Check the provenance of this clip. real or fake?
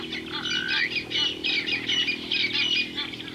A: real